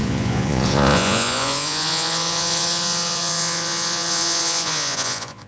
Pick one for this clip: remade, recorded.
remade